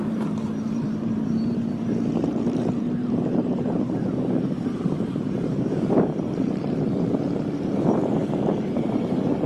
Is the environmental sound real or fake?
fake